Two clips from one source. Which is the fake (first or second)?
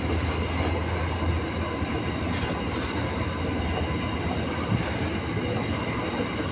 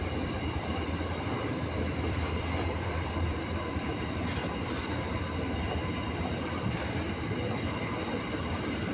second